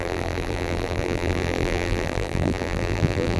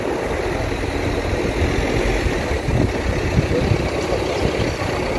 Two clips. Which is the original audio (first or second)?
second